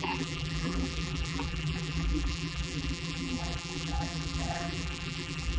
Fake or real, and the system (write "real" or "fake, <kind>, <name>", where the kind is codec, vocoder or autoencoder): fake, vocoder, BigVGAN v2